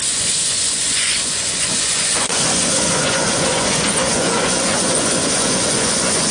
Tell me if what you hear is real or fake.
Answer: fake